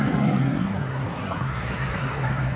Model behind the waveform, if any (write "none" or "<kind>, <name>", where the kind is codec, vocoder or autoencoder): codec, SNAC